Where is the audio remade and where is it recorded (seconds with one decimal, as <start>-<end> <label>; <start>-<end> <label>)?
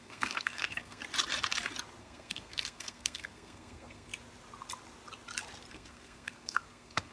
0.0-1.0 remade; 1.0-2.0 recorded; 2.0-4.1 remade; 4.1-5.7 recorded; 5.7-7.1 remade